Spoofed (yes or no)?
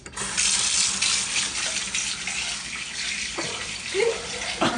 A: no